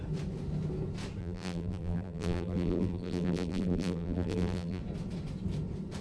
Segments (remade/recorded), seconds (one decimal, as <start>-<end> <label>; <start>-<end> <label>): 0.0-1.2 recorded; 1.2-4.8 remade; 4.8-6.0 recorded